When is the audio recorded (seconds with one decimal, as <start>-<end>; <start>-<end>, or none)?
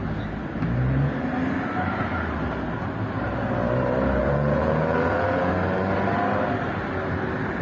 0.0-4.2; 5.5-7.6